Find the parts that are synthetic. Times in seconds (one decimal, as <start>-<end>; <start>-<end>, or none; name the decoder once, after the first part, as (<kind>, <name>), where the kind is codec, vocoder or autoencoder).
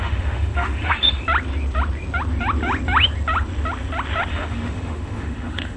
0.0-1.2 (autoencoder, DAC-VAE); 4.3-5.8